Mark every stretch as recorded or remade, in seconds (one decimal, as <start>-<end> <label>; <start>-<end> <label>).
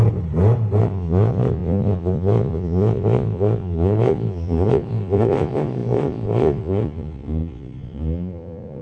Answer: 0.0-0.8 recorded; 0.8-8.8 remade